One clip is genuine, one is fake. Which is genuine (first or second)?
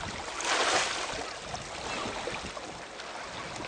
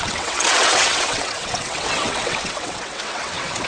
first